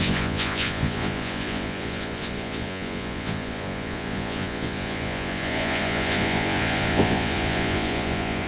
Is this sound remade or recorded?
remade